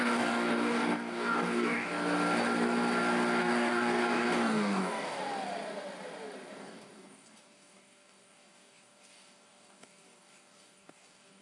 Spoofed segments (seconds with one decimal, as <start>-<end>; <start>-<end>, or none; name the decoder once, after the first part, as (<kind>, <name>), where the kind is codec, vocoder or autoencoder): 0.0-1.9 (codec, DAC); 3.4-5.2; 6.5-11.4